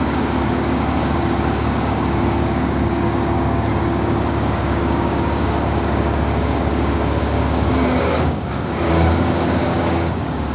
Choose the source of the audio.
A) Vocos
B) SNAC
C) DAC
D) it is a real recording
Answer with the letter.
C